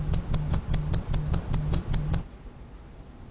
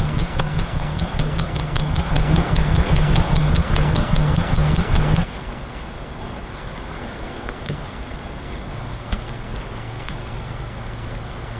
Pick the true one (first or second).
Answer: first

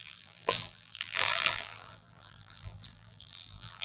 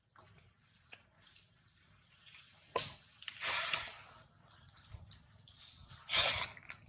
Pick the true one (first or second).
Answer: second